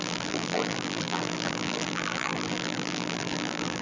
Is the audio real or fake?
fake